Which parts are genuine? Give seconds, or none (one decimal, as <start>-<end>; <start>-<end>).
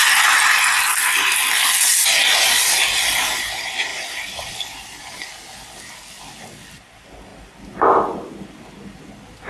0.0-3.9; 5.1-9.5